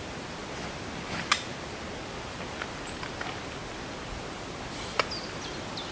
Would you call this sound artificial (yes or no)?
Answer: no